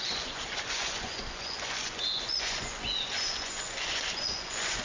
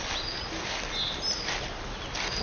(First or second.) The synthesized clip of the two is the first